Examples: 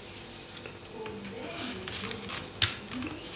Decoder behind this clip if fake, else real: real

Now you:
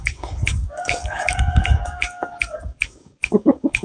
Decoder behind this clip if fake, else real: fake, codec, DAC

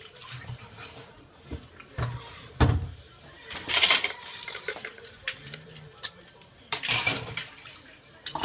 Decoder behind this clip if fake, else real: fake, vocoder, BigVGAN v2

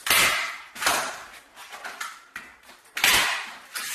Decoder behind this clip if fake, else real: real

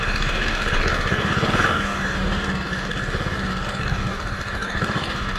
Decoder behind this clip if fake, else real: fake, codec, DAC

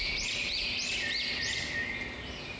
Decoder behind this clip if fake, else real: real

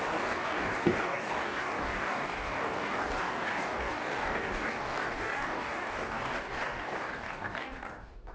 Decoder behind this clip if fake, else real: fake, codec, DAC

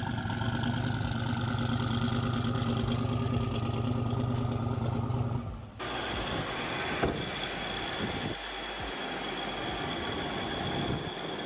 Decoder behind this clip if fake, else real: real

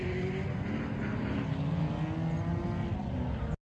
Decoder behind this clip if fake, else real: real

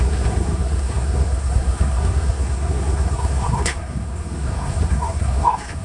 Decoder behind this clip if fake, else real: fake, codec, SNAC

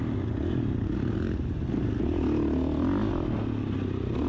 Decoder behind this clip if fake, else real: real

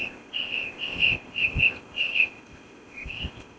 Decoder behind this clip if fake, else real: fake, codec, ZipCodec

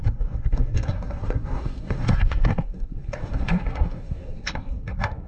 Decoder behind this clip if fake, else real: fake, codec, SNAC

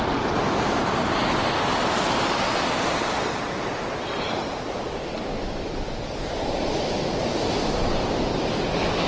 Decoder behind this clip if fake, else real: real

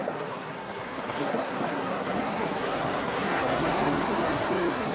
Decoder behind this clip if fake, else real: fake, codec, SNAC